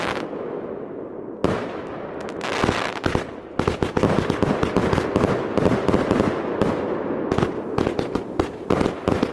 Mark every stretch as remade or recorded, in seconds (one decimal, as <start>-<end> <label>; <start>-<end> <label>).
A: 0.0-9.3 recorded